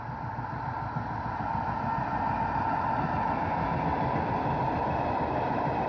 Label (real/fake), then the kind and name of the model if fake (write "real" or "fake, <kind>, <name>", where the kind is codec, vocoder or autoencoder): real